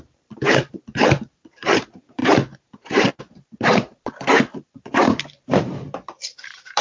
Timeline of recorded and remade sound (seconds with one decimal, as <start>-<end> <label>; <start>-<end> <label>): 0.0-6.8 remade